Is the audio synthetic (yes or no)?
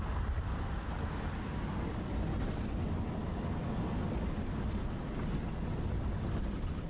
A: no